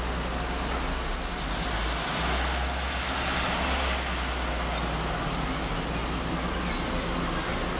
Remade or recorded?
recorded